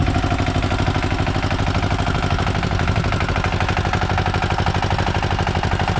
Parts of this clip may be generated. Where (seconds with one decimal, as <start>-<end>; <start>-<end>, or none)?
none